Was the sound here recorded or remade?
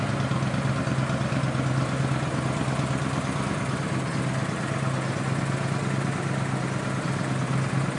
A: recorded